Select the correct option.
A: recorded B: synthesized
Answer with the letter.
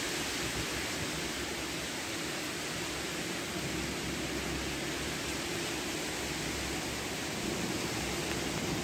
A